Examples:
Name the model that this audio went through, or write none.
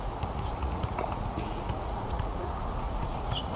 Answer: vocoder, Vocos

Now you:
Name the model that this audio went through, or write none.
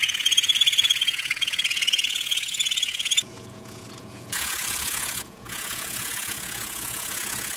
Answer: vocoder, Vocos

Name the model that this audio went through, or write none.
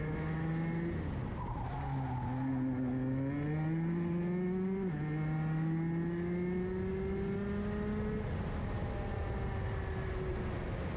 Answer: none